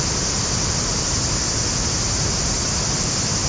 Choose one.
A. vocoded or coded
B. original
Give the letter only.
B